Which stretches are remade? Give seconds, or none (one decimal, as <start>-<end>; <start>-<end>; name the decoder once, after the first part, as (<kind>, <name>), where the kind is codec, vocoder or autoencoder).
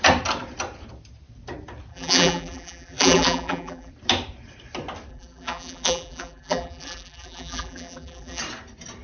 1.9-3.9 (vocoder, BigVGAN v2); 5.1-8.4